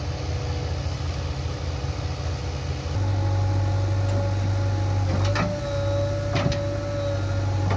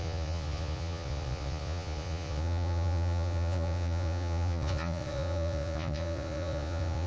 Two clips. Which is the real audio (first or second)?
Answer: first